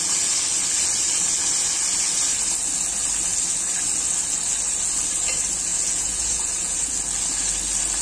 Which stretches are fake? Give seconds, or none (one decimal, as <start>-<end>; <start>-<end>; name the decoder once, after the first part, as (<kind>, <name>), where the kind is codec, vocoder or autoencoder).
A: 5.7-6.9 (vocoder, Vocos)